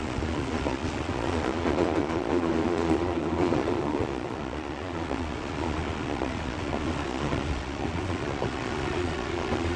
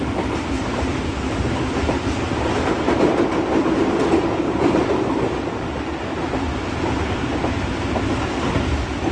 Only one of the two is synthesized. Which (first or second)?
first